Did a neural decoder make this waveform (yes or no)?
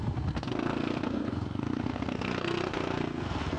yes